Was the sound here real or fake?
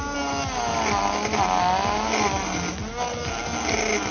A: real